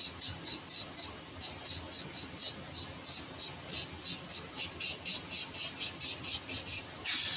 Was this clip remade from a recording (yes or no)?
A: no